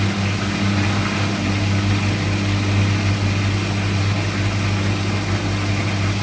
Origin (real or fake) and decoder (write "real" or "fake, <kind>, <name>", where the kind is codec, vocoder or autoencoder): real